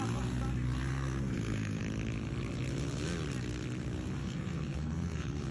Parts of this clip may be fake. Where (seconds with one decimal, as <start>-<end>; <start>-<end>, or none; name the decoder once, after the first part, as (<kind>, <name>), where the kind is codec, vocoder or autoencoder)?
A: 0.9-1.8 (codec, SNAC); 4.2-5.5

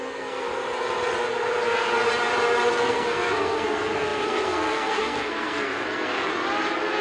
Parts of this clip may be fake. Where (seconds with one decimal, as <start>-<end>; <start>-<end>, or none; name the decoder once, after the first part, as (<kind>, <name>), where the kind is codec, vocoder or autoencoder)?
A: 0.0-0.5 (codec, SNAC); 2.7-6.3

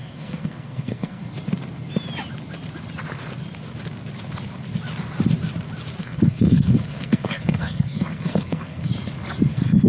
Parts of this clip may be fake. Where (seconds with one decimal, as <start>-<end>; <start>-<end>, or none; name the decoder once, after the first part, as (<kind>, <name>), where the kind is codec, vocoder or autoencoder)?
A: 0.0-1.2 (codec, SNAC); 6.0-8.9; 9.5-9.9

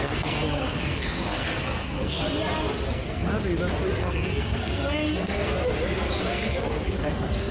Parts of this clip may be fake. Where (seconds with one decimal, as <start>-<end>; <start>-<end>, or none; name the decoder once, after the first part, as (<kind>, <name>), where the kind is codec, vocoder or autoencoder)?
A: 0.0-2.2 (codec, SNAC); 2.9-3.3; 4.0-5.5; 6.2-7.5

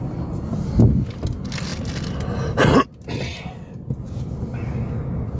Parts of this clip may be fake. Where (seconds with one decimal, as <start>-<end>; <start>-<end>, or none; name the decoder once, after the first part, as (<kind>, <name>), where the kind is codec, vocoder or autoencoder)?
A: none

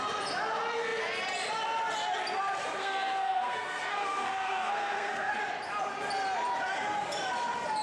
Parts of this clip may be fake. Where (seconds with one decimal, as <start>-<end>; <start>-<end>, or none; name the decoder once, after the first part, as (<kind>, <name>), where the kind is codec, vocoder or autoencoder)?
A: 2.8-5.3 (codec, SNAC)

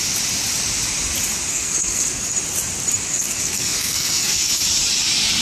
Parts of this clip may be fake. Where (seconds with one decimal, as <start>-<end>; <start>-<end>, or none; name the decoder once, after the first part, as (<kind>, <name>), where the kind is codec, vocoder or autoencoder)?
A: 1.5-2.3 (codec, SNAC); 3.1-4.6